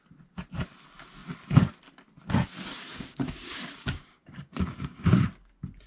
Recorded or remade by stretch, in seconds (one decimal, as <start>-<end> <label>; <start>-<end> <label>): 0.0-2.9 recorded; 2.9-5.2 remade; 5.2-5.9 recorded